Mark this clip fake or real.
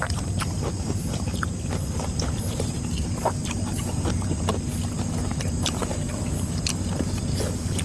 real